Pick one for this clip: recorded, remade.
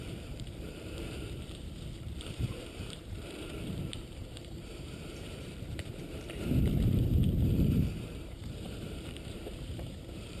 remade